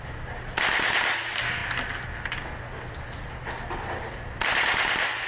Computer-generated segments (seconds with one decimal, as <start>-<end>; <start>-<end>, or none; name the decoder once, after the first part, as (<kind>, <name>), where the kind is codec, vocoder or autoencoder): none